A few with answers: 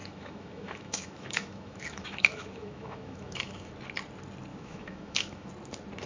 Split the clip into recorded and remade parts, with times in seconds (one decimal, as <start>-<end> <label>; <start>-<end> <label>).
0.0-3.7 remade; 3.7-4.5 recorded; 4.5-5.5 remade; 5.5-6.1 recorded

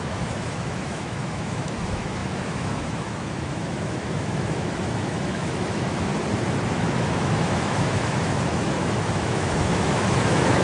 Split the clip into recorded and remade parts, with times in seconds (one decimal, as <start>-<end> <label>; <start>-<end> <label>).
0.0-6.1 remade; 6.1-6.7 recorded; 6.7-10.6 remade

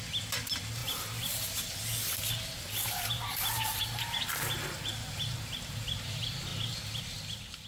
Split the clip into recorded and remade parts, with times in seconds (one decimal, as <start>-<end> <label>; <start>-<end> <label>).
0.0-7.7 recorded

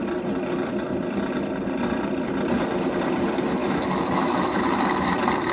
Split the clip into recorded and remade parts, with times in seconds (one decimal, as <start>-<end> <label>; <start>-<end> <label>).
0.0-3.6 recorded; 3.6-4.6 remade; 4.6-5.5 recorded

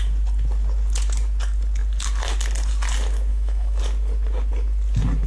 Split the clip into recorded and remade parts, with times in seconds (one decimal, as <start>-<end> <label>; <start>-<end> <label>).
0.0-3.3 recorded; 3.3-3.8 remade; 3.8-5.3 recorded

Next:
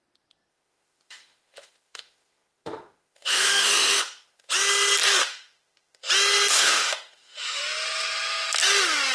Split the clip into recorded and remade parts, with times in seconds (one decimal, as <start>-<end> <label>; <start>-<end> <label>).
0.0-0.5 recorded; 0.5-4.5 remade; 4.5-5.2 recorded; 5.2-6.1 remade; 6.1-6.5 recorded; 6.5-7.6 remade; 7.6-9.1 recorded

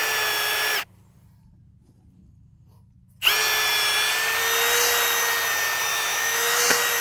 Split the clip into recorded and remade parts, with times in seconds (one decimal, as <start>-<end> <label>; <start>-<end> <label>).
0.0-5.9 recorded; 5.9-6.6 remade; 6.6-7.0 recorded

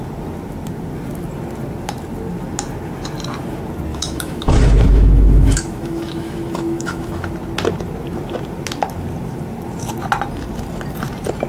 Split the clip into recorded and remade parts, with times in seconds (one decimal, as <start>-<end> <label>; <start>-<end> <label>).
0.0-3.9 recorded; 3.9-7.3 remade; 7.3-11.5 recorded